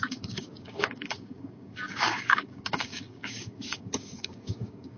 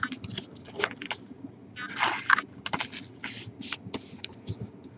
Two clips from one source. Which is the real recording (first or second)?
second